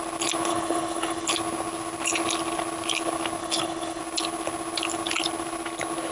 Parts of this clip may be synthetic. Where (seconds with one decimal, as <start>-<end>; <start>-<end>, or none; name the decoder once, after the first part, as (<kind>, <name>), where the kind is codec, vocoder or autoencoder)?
0.5-1.3 (codec, HILCodec); 3.4-4.0